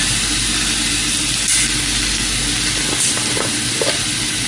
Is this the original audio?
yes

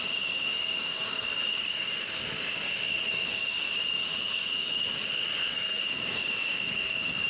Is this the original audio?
no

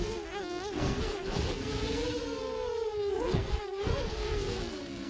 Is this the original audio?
no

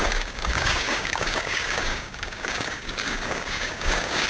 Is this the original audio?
no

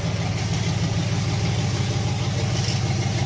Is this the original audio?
yes